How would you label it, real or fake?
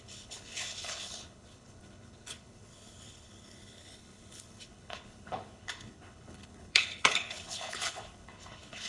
fake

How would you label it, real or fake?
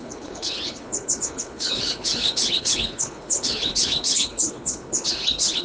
fake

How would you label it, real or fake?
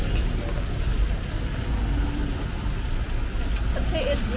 real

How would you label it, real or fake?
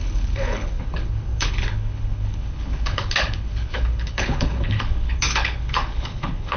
fake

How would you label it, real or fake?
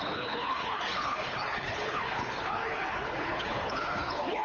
fake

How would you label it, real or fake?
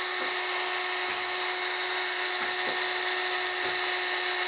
real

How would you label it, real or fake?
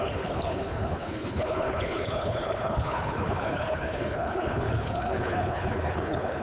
fake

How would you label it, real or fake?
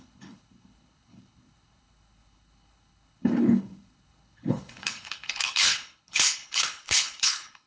fake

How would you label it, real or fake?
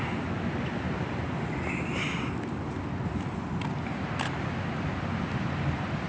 real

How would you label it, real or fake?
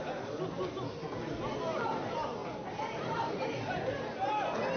real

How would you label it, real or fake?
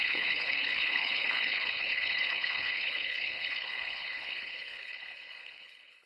fake